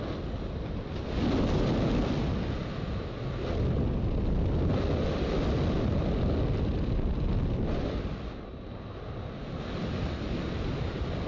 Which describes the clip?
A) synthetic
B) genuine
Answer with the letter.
B